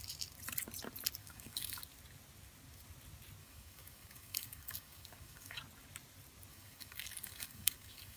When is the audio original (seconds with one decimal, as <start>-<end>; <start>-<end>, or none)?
0.0-1.2; 1.8-3.4; 5.6-6.5